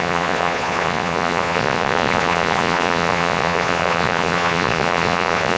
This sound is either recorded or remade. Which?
remade